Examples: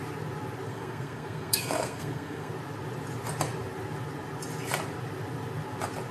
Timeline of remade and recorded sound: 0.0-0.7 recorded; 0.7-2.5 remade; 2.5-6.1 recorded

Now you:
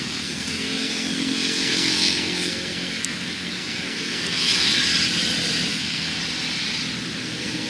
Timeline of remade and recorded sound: 0.0-4.7 remade; 4.7-5.7 recorded; 5.7-6.2 remade; 6.2-7.2 recorded; 7.2-7.7 remade

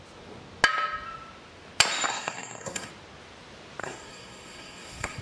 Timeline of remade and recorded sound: 0.0-2.1 recorded; 2.1-2.9 remade; 2.9-3.8 recorded; 3.8-5.2 remade

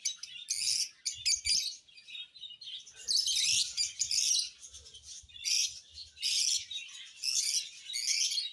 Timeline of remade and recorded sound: 0.0-8.5 recorded

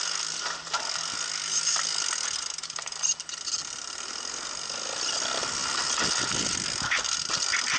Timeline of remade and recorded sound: 0.0-7.8 recorded

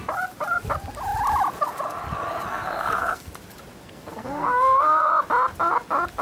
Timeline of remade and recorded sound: 0.0-2.5 recorded; 2.5-3.3 remade; 3.3-3.8 recorded; 3.8-5.1 remade; 5.1-6.2 recorded

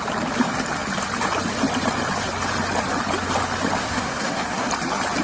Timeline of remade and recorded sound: 0.0-3.8 recorded; 3.8-4.7 remade; 4.7-5.2 recorded

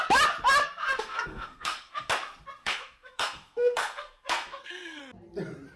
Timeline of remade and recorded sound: 0.0-0.6 recorded; 0.6-2.1 remade; 2.1-2.6 recorded; 2.6-5.0 remade; 5.0-5.8 recorded